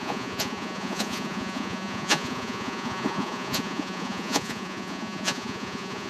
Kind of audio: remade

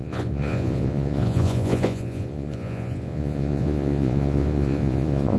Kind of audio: remade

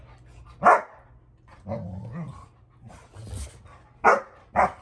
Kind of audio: recorded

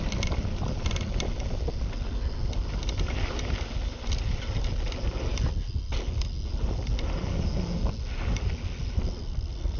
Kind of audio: recorded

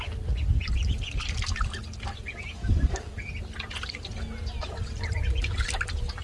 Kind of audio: recorded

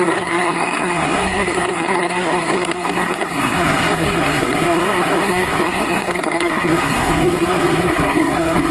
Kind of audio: remade